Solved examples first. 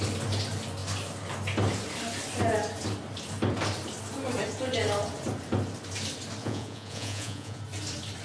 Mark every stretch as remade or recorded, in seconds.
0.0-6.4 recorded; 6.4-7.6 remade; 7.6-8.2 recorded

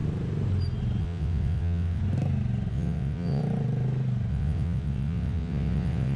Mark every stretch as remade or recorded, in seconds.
0.0-1.0 recorded; 1.0-2.0 remade; 2.0-2.7 recorded; 2.7-3.4 remade; 3.4-4.3 recorded; 4.3-6.2 remade

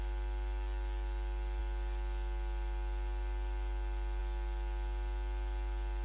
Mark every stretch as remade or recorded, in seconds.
0.0-6.0 recorded

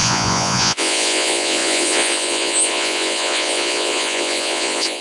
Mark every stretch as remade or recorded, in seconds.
0.0-5.0 remade

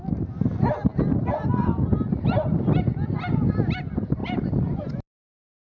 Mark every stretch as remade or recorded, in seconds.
0.0-5.8 recorded